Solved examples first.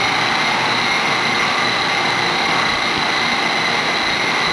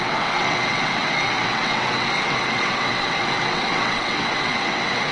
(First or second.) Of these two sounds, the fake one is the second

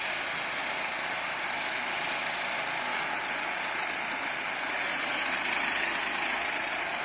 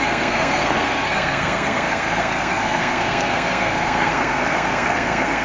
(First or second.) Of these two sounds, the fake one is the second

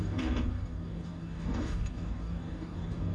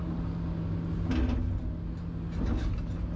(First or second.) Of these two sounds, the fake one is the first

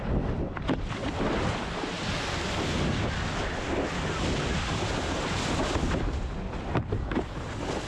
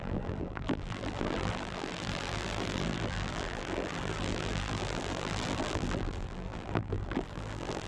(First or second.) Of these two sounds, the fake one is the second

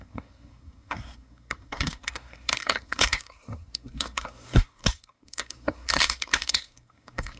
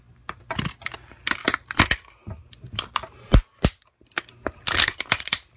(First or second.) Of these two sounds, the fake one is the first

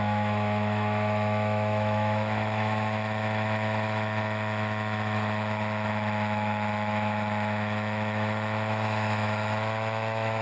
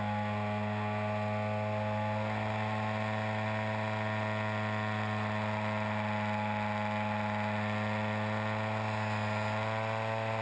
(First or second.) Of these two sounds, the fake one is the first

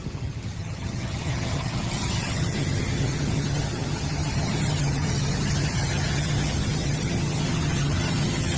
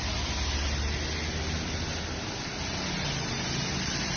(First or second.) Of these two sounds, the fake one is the first